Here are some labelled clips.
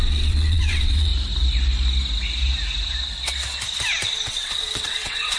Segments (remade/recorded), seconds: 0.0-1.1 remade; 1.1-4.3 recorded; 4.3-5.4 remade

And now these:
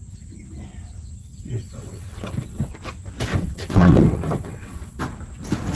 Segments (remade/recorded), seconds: 0.0-1.2 recorded; 1.2-2.7 remade; 2.7-3.3 recorded; 3.3-5.0 remade; 5.0-5.8 recorded